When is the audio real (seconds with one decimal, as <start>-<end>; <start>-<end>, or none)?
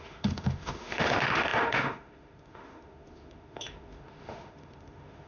none